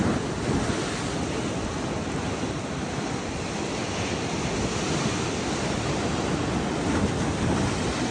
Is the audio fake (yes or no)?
no